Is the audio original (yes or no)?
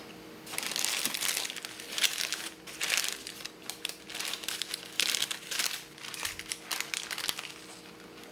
yes